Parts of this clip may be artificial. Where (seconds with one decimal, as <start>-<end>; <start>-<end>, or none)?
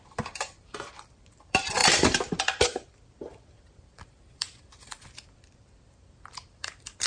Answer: 0.0-7.1